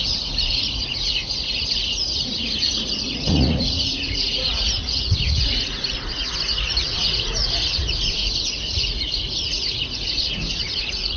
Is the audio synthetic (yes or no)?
yes